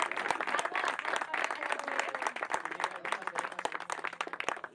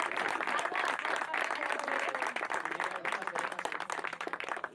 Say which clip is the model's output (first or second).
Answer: second